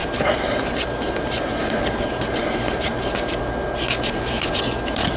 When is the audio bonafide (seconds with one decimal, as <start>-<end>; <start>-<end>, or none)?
3.1-5.2